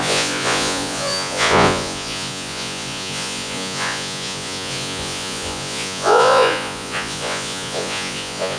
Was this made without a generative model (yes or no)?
no